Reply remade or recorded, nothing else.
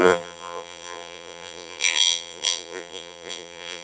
remade